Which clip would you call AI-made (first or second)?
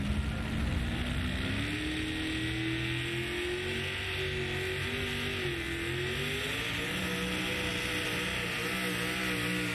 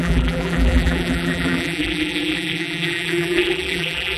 second